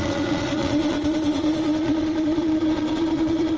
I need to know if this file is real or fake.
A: fake